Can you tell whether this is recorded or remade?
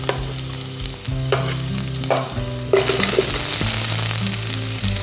recorded